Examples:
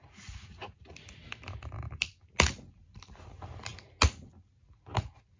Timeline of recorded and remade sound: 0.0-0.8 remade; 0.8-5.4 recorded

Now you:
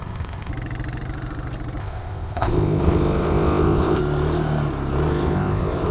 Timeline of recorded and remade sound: 0.0-0.5 remade; 0.5-1.8 recorded; 1.8-4.0 remade; 4.0-5.1 recorded; 5.1-5.9 remade

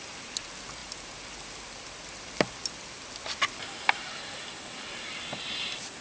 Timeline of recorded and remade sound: 0.0-6.0 recorded

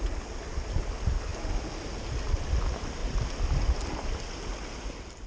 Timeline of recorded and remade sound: 0.0-5.3 recorded